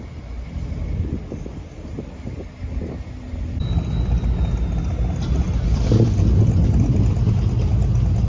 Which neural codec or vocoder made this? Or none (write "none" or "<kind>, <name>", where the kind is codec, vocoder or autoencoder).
none